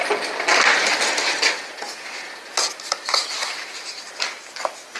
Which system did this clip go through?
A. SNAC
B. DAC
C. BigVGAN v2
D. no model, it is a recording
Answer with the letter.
D